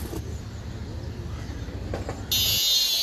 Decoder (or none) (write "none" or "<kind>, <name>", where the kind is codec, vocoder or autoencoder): none